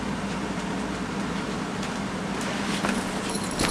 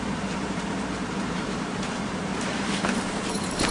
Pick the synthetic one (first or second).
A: second